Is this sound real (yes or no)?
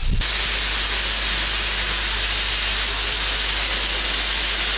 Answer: yes